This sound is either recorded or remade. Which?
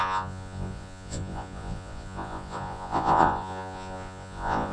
remade